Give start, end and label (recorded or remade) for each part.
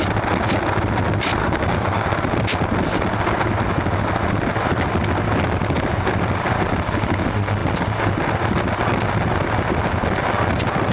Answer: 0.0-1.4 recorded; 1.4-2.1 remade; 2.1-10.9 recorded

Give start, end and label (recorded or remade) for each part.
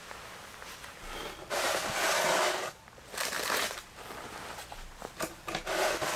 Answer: 0.0-2.3 recorded; 2.3-2.8 remade; 2.8-6.2 recorded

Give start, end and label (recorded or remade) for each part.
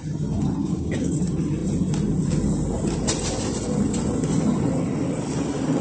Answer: 0.0-0.6 recorded; 0.6-1.1 remade; 1.1-5.8 recorded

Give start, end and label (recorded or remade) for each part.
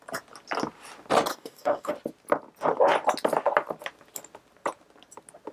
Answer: 0.0-1.3 recorded; 1.3-1.9 remade; 1.9-5.5 recorded